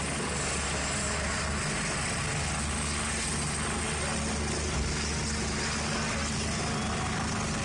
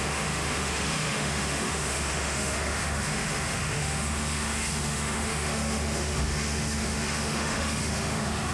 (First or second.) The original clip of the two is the first